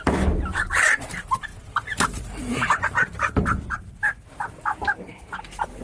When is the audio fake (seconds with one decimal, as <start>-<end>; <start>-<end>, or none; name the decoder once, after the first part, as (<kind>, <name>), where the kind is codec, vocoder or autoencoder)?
0.0-1.5 (vocoder, BigVGAN v2); 2.2-3.0; 5.1-5.8